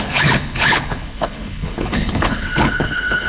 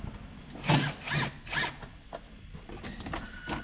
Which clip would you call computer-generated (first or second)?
first